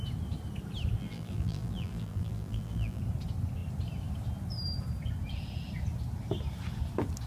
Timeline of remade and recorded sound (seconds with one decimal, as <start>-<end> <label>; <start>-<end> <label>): 0.0-1.0 recorded; 1.0-3.0 remade; 3.0-7.3 recorded